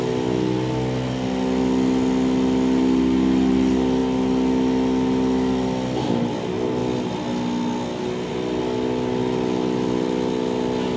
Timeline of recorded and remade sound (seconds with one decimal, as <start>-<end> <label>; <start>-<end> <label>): 0.0-11.0 recorded